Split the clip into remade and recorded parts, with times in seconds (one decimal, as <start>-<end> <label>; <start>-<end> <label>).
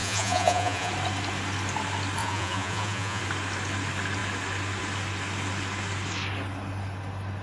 0.0-0.9 remade; 0.9-2.2 recorded; 2.2-3.2 remade; 3.2-7.4 recorded